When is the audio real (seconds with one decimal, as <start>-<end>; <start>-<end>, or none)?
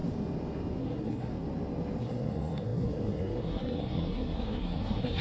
0.0-0.8; 1.3-2.0